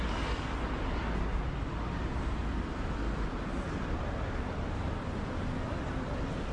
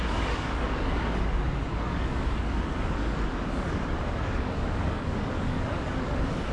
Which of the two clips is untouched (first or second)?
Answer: first